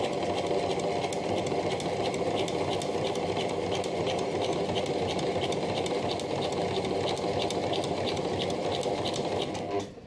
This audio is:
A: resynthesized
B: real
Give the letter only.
B